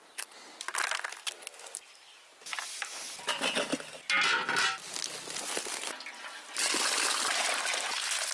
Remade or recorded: recorded